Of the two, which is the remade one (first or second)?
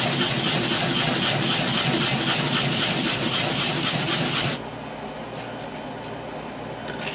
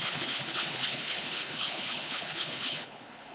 second